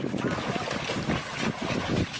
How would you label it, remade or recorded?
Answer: recorded